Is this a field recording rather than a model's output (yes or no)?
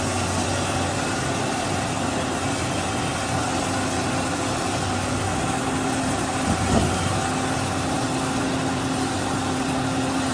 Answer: yes